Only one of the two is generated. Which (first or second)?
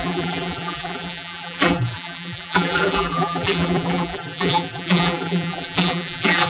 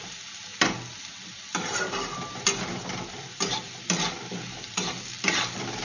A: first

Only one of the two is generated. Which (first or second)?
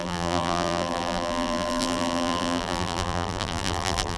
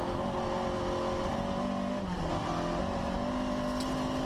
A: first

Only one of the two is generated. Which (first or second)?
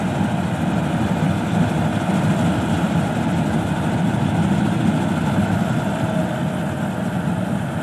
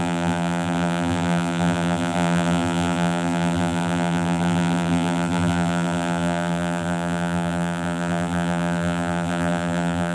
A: second